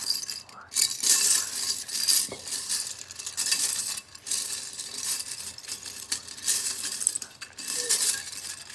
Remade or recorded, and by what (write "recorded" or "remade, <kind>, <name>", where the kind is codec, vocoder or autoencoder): remade, vocoder, BigVGAN v2